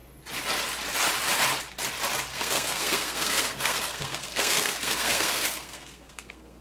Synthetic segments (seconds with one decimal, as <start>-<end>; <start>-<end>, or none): 2.3-6.6